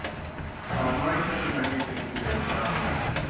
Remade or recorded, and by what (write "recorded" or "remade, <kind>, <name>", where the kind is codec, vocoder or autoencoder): recorded